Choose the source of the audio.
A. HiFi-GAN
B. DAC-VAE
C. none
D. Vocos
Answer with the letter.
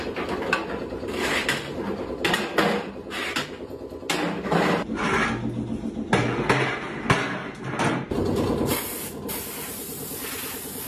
C